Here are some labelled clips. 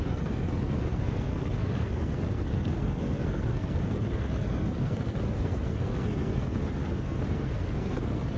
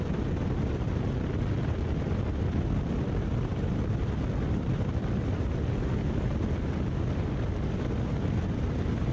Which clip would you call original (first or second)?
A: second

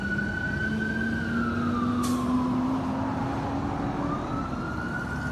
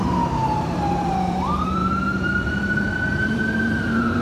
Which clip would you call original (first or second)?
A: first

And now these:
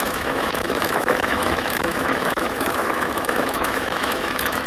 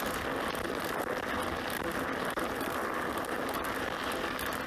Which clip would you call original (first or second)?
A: second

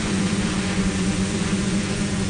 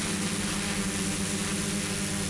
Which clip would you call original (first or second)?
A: second